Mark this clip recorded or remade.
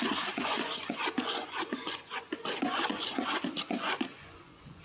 remade